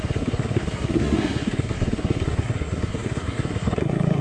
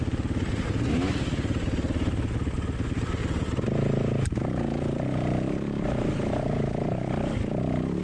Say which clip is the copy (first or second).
first